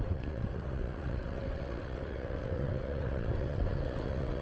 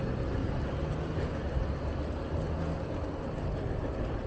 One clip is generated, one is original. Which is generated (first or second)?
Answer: first